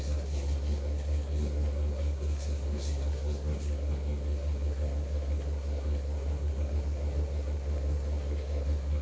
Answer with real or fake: fake